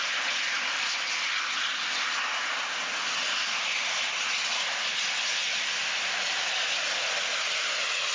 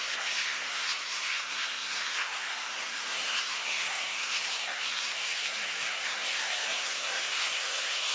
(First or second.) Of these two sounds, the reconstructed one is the second